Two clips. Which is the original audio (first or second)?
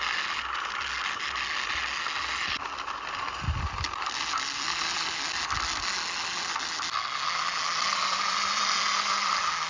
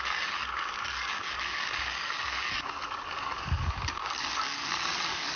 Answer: first